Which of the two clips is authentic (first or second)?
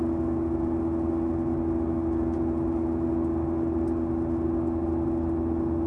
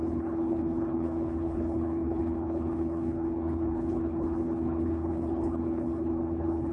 first